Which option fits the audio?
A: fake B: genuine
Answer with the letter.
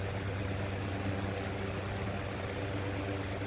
B